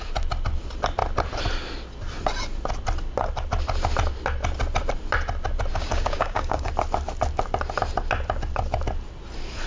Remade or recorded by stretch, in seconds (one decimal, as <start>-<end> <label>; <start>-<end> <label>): 0.0-5.7 recorded; 5.7-6.7 remade; 6.7-9.7 recorded

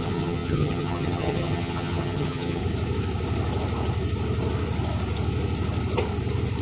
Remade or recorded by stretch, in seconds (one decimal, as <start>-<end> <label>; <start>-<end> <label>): 0.0-2.6 remade; 2.6-6.6 recorded

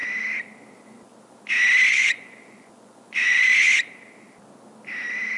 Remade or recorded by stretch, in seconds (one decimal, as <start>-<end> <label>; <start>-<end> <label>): 0.0-0.7 recorded; 0.7-1.1 remade; 1.1-1.9 recorded; 1.9-3.5 remade; 3.5-5.4 recorded

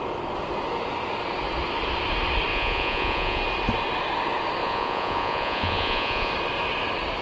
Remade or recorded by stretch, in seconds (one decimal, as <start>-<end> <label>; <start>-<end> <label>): 0.0-2.5 recorded; 2.5-3.4 remade; 3.4-4.6 recorded; 4.6-6.3 remade; 6.3-7.2 recorded

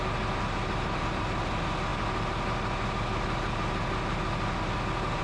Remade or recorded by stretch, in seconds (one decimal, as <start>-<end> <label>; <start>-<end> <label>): 0.0-5.2 recorded

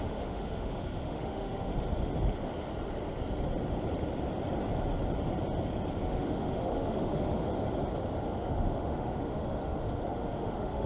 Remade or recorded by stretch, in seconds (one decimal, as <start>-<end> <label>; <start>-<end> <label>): 0.0-1.7 remade; 1.7-6.0 recorded; 6.0-7.5 remade; 7.5-8.2 recorded; 8.2-10.9 remade

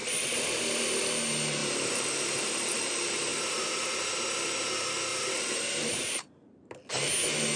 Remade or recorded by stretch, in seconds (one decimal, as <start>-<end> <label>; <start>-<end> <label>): 0.0-1.0 remade; 1.0-1.6 recorded; 1.6-2.8 remade; 2.8-3.3 recorded; 3.3-3.9 remade; 3.9-5.1 recorded; 5.1-6.5 remade; 6.5-7.6 recorded